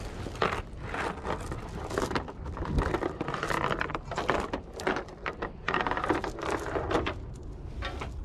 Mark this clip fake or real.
real